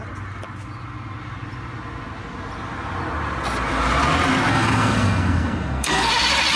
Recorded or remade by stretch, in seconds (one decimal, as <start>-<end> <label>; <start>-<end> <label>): 0.0-4.5 recorded; 4.5-6.1 remade; 6.1-6.6 recorded